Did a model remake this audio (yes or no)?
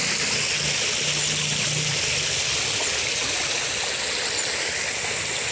no